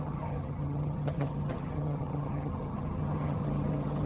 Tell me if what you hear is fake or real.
fake